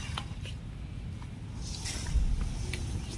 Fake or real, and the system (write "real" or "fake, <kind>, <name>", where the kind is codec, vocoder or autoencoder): real